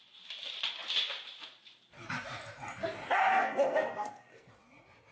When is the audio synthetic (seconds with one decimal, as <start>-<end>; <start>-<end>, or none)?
3.3-4.5